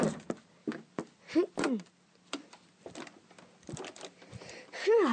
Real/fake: real